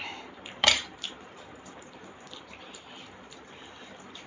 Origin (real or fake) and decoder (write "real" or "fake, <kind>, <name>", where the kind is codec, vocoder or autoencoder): fake, vocoder, BigVGAN v2